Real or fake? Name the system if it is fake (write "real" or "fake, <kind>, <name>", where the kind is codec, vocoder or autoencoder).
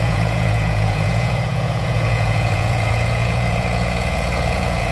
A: fake, vocoder, Vocos